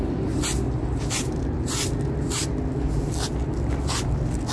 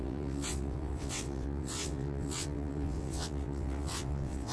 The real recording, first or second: first